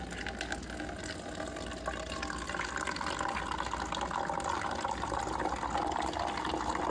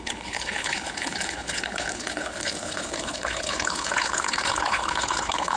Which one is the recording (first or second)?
first